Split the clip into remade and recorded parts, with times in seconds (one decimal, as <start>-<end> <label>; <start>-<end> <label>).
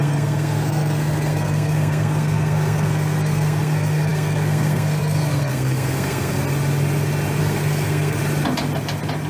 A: 0.0-6.4 remade; 6.4-7.4 recorded; 7.4-8.2 remade; 8.2-9.3 recorded